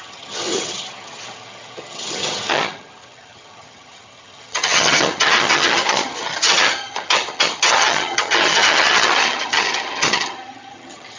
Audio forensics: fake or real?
fake